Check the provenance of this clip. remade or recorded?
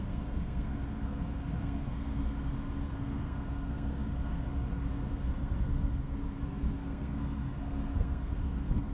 remade